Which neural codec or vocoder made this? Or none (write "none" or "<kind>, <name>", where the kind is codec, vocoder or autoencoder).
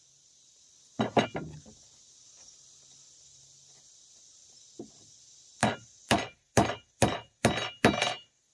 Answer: none